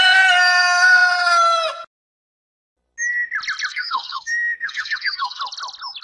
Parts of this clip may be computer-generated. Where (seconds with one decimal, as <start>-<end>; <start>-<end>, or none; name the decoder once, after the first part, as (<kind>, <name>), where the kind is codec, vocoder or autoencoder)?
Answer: 3.7-5.4 (codec, SNAC)